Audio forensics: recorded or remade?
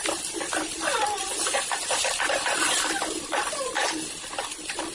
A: recorded